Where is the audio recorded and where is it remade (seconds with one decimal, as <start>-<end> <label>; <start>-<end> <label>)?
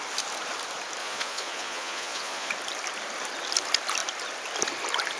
0.0-1.0 recorded; 1.0-2.5 remade; 2.5-5.2 recorded